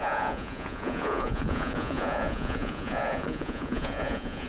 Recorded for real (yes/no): no